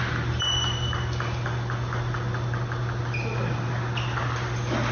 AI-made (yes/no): no